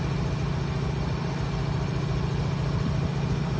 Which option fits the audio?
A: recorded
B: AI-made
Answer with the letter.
A